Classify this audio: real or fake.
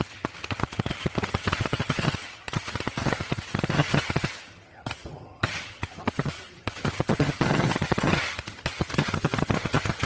fake